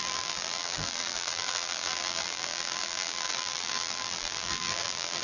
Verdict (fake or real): fake